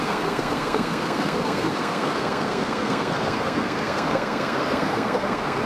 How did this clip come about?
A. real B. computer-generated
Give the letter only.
B